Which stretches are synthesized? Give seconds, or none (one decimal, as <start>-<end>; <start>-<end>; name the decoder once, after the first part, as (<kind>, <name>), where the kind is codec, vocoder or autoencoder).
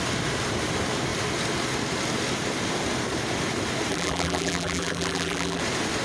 3.9-5.6 (vocoder, BigVGAN v2)